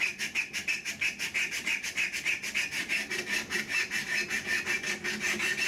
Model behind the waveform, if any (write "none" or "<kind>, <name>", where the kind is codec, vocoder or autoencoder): none